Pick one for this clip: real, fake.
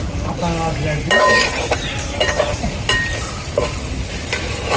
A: real